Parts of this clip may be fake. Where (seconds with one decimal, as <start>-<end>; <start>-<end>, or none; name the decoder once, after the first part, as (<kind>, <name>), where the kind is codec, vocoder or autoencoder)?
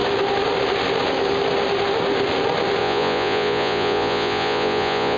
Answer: 2.8-5.2 (vocoder, Vocos)